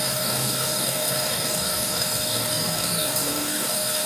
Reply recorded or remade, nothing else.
remade